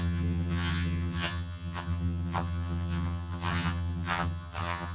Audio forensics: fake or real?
fake